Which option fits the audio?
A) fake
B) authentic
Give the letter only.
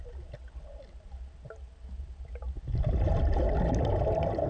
B